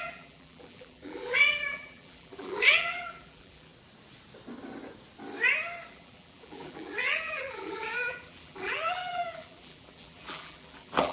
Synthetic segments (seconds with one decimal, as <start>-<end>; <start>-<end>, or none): 0.0-3.7; 5.9-11.1